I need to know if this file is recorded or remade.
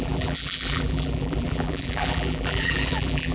remade